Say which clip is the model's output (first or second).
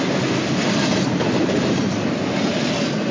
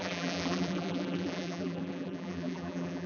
second